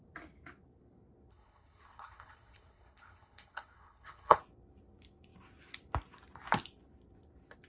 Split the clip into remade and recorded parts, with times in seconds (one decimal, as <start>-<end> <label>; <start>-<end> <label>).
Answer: 0.0-1.3 recorded; 1.3-4.4 remade; 4.4-7.7 recorded